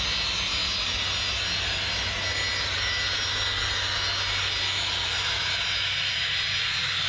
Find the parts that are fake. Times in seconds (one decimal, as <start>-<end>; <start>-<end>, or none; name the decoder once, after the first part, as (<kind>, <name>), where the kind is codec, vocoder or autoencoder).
none